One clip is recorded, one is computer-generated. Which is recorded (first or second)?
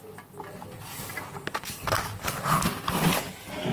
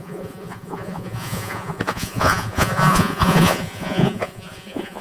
first